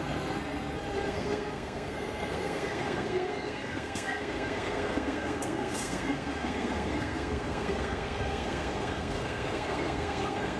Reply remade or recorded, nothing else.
remade